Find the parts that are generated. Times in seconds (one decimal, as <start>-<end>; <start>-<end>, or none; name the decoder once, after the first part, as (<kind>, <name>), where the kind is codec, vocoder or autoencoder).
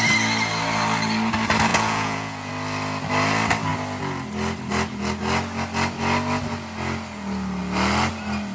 1.7-2.5 (vocoder, Vocos)